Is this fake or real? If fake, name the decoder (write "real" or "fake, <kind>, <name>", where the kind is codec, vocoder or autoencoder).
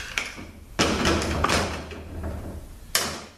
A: real